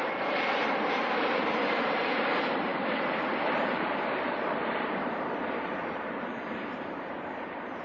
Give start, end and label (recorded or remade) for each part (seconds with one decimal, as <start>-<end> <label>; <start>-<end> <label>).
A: 0.0-7.8 remade